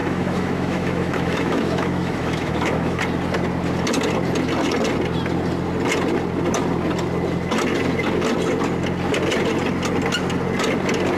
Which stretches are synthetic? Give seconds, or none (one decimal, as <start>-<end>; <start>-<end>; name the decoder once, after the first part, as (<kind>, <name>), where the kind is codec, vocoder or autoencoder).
0.0-3.0 (autoencoder, DAC-VAE)